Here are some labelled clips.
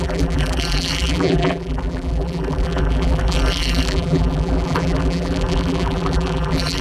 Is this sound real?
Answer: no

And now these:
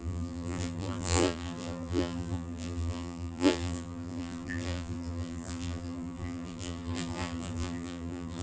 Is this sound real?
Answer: no